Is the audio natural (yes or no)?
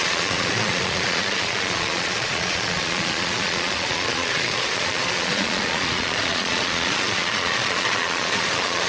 no